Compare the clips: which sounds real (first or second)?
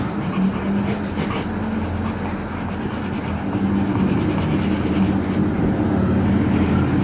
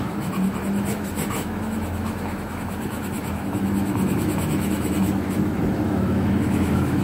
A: first